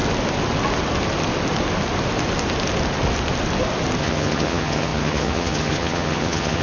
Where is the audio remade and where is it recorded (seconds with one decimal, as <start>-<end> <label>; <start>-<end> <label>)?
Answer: 0.0-4.0 recorded; 4.0-6.6 remade